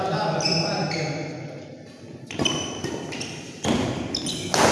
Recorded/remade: recorded